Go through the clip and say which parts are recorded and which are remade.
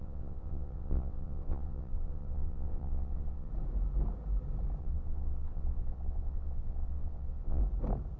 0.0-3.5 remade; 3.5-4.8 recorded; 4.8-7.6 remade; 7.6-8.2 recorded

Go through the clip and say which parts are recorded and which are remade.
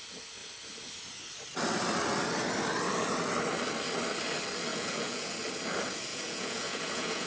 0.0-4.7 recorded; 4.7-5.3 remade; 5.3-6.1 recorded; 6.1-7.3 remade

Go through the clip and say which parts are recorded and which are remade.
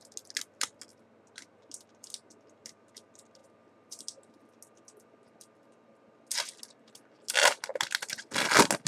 0.0-8.9 recorded